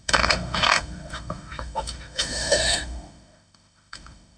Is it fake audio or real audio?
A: fake